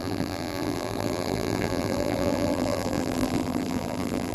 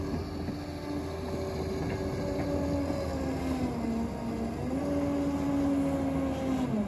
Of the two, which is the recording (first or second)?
second